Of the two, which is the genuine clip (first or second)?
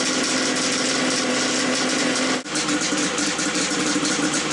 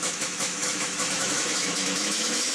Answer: first